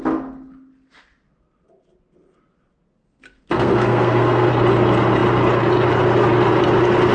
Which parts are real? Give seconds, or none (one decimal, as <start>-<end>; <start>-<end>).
0.0-3.0; 4.5-7.1

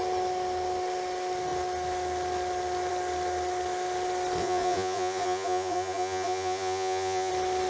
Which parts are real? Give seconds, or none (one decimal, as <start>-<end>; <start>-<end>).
0.0-4.4; 7.3-7.7

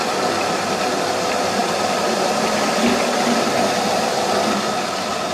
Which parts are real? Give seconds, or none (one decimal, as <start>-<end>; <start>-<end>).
0.0-5.3

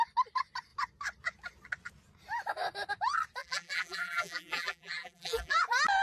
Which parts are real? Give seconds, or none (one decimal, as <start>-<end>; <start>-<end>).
0.0-3.4; 5.6-6.0

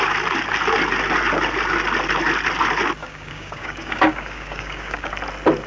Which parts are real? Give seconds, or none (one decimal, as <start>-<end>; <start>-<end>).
0.0-3.0; 5.1-5.7

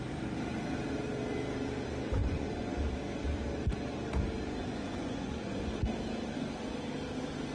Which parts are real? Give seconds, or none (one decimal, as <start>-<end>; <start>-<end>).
0.0-2.2; 2.7-4.6; 5.8-7.5

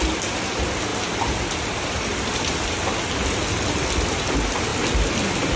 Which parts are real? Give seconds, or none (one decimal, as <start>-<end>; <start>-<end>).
0.0-5.6

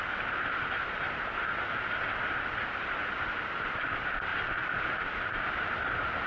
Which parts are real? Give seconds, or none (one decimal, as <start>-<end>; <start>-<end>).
0.0-6.3